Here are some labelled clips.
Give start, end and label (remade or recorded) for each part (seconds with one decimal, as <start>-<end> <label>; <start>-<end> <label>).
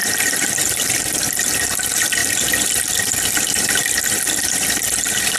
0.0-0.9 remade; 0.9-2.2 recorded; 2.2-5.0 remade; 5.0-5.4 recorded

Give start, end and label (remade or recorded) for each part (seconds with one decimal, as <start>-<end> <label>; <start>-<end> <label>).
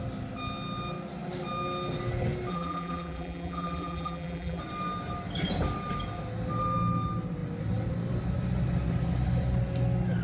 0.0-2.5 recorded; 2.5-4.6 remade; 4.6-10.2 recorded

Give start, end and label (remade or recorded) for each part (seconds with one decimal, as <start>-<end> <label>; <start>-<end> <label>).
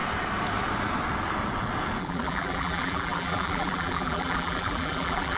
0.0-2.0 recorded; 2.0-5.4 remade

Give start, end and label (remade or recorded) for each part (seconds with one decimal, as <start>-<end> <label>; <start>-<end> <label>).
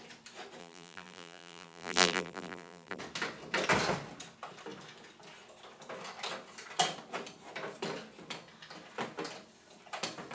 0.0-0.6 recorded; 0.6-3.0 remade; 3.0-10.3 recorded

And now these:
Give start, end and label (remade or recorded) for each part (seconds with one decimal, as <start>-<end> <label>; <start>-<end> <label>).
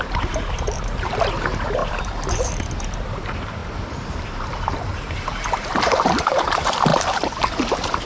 0.0-3.6 remade; 3.6-4.2 recorded; 4.2-8.1 remade